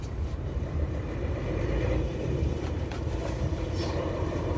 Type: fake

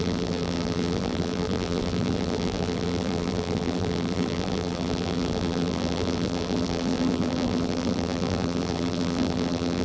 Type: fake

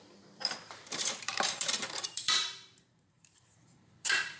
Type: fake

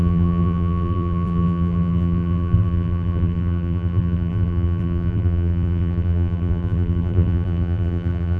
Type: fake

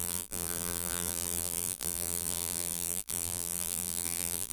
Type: fake